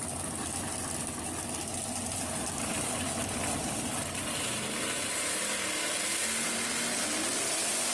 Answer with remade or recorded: recorded